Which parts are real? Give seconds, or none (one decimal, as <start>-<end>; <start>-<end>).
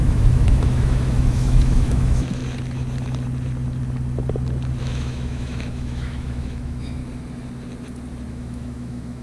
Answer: 2.4-4.8; 7.0-8.3